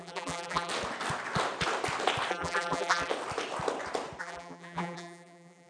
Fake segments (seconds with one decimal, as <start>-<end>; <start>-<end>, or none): 0.0-0.7; 2.3-3.1; 4.2-5.7